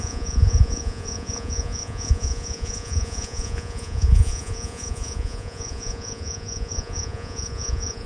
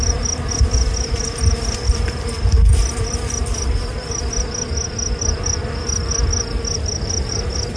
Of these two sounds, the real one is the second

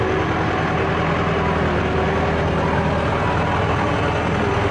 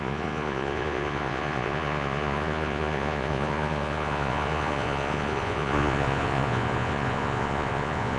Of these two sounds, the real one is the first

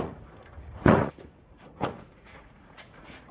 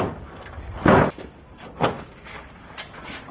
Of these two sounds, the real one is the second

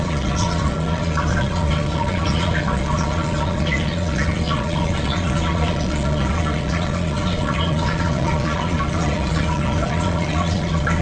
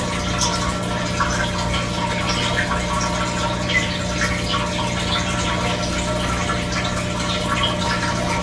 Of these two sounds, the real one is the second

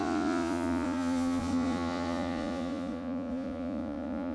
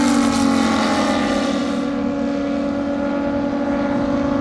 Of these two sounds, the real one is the second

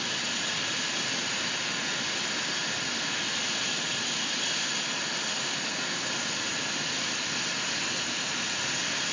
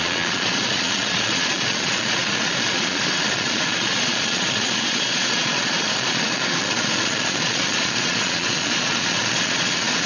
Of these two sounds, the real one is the first